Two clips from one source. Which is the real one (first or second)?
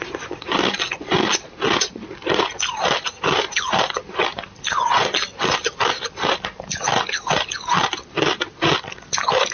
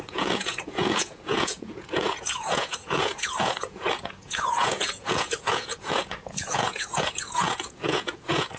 first